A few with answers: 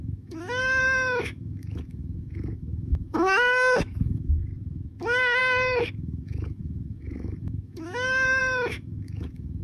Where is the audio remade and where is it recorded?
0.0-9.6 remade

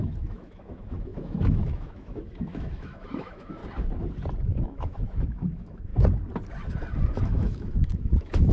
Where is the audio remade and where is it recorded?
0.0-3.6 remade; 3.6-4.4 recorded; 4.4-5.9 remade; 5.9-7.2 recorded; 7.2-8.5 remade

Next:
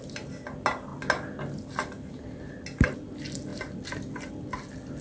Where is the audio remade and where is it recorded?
0.0-5.0 recorded

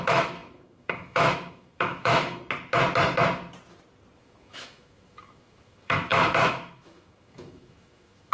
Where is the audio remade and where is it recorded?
0.0-2.4 remade; 2.4-4.2 recorded; 4.2-8.3 remade

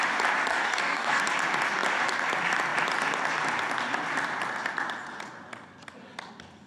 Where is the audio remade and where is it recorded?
0.0-0.5 recorded; 0.5-1.2 remade; 1.2-6.7 recorded